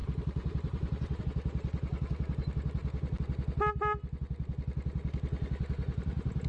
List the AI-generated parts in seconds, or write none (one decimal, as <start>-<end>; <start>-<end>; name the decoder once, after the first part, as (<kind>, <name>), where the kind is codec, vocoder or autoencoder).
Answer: 0.0-1.2 (vocoder, BigVGAN v2)